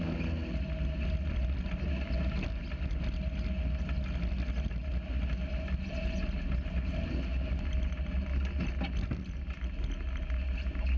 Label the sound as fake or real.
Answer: real